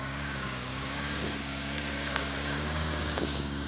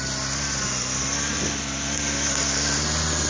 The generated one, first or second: first